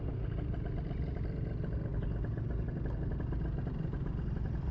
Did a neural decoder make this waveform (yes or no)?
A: no